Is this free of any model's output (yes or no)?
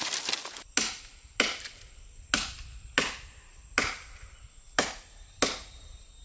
yes